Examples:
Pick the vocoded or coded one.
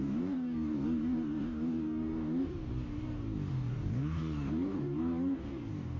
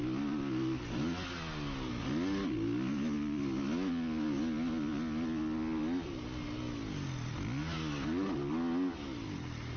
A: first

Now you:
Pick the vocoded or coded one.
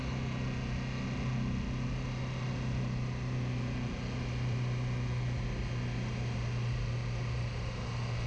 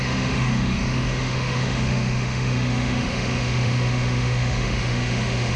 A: second